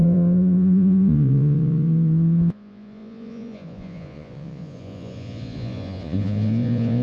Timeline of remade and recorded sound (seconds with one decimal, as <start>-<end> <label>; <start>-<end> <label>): 0.0-7.0 remade